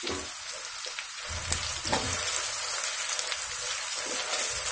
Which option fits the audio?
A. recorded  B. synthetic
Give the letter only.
A